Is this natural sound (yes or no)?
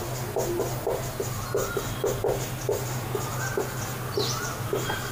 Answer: yes